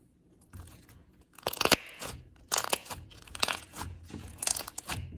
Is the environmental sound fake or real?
fake